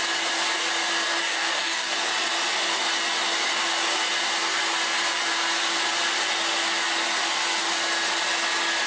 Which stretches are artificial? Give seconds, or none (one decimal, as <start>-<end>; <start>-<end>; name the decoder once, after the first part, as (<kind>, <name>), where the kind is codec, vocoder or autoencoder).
1.2-1.9 (codec, DAC)

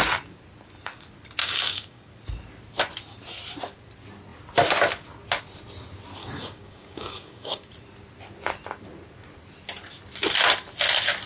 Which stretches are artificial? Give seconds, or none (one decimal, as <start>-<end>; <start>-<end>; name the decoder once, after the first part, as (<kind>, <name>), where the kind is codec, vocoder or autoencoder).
1.4-2.1 (codec, DAC); 6.2-7.7

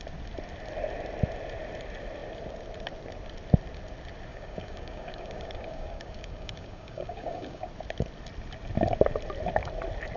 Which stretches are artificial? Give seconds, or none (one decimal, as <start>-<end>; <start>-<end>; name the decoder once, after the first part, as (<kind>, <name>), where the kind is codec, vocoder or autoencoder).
4.3-7.7 (codec, DAC)

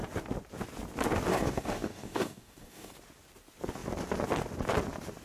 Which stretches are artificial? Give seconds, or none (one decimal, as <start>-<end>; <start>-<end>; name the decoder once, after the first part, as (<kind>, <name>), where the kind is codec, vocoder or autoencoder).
1.3-2.9 (codec, DAC)

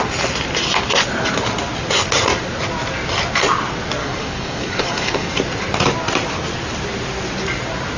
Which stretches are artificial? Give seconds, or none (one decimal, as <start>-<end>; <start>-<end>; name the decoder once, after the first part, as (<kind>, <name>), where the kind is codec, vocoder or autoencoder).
4.0-5.3 (codec, DAC)